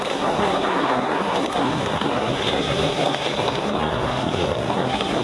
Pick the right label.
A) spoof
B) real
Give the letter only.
A